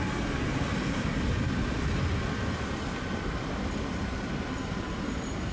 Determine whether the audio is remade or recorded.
recorded